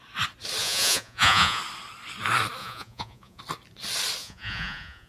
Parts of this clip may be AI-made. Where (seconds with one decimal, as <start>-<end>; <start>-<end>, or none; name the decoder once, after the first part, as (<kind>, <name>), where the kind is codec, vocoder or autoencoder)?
0.6-1.6 (vocoder, Vocos); 2.6-3.4; 4.2-5.1